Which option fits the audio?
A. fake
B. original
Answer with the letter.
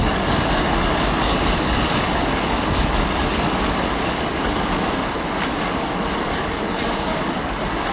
A